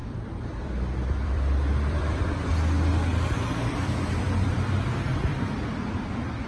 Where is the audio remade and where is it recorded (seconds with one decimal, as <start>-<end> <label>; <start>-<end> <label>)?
0.0-2.5 remade; 2.5-3.1 recorded; 3.1-6.5 remade